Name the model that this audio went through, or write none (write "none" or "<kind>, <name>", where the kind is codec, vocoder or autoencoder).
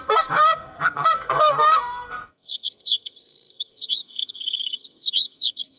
codec, SNAC